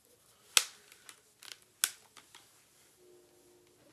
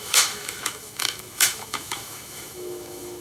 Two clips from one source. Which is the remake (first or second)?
second